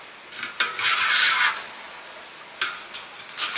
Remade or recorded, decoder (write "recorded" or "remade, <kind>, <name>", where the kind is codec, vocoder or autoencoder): recorded